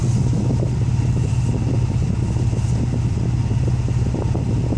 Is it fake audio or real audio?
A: real